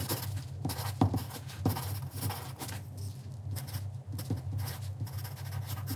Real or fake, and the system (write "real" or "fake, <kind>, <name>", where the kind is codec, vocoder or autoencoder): real